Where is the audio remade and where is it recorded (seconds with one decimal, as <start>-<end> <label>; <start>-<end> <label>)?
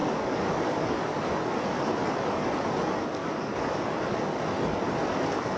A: 0.0-1.3 remade; 1.3-3.2 recorded; 3.2-3.8 remade; 3.8-5.6 recorded